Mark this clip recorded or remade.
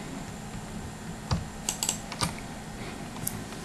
recorded